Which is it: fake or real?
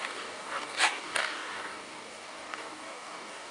fake